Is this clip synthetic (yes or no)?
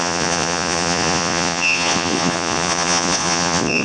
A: yes